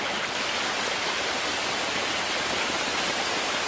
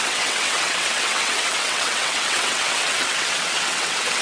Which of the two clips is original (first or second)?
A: first